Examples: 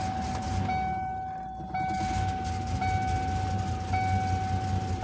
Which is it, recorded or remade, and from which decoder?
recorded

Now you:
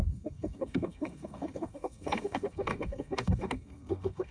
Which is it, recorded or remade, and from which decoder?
remade, codec, SNAC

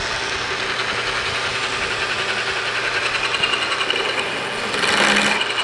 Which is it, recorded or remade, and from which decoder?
recorded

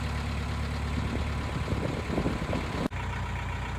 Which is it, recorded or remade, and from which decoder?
recorded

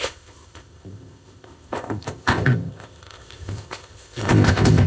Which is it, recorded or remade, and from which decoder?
remade, codec, ZipCodec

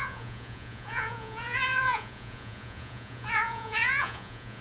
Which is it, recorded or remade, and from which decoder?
remade, vocoder, Vocos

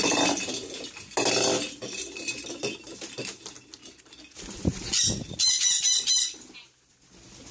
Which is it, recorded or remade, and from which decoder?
recorded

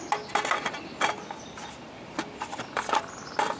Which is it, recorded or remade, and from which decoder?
recorded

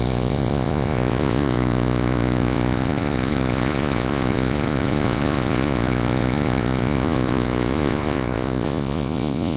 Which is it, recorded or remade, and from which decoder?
remade, vocoder, Vocos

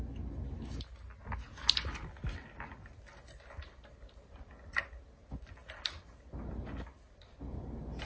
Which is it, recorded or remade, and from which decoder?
recorded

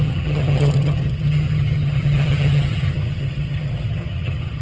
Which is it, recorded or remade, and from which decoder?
remade, vocoder, HiFi-GAN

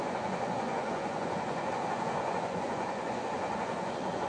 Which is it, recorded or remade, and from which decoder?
remade, vocoder, Vocos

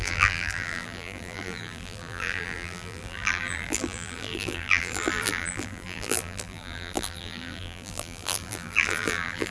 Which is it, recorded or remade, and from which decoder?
remade, vocoder, BigVGAN v2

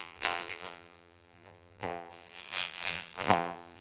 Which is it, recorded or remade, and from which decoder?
remade, vocoder, BigVGAN v2